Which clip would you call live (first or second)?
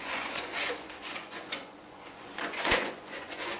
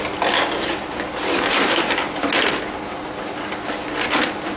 second